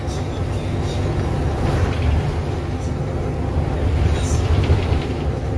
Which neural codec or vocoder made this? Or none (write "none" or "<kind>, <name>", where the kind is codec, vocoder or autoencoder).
none